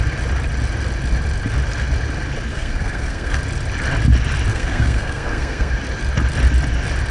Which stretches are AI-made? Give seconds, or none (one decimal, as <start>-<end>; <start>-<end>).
2.5-3.4; 4.5-5.7